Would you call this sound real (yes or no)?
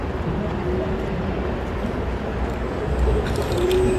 yes